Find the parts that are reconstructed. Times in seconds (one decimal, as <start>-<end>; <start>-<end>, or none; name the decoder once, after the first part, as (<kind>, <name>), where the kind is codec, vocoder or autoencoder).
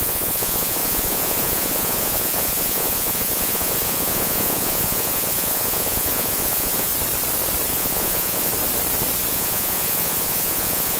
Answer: 0.0-6.9 (vocoder, Vocos); 7.7-8.5; 9.3-11.0